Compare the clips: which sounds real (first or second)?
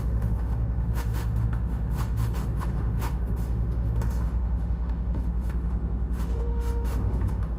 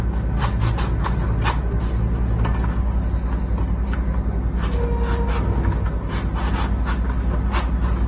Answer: second